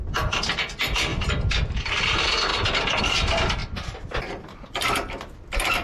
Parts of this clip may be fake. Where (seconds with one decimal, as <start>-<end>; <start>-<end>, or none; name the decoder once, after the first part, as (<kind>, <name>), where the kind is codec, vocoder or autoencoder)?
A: 1.1-1.9 (vocoder, BigVGAN v2); 3.6-4.1